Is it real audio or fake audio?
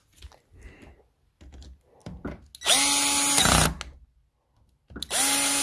real